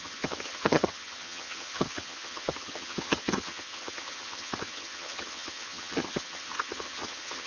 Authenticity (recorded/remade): remade